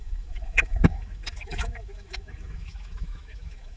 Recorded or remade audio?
remade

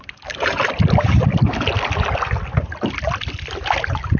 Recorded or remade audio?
recorded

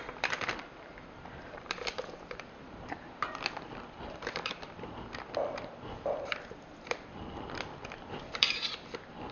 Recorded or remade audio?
remade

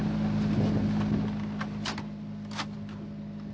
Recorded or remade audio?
recorded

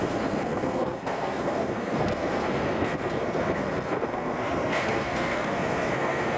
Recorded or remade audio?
remade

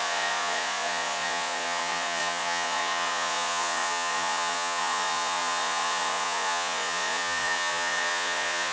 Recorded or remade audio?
remade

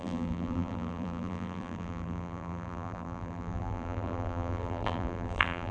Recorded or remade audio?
remade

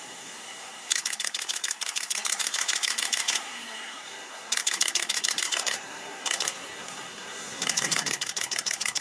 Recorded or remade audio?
remade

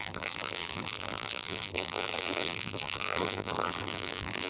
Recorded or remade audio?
remade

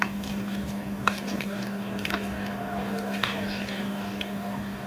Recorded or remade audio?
remade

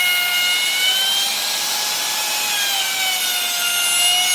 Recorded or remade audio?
recorded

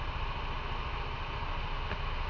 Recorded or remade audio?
recorded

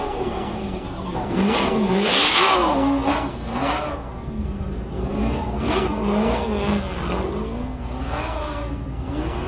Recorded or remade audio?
remade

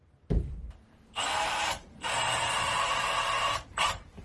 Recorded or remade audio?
remade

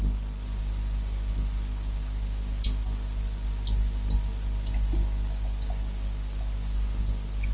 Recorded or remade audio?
recorded